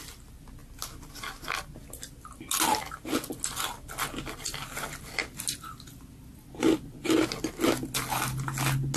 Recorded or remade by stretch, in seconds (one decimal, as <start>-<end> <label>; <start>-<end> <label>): 0.0-9.0 recorded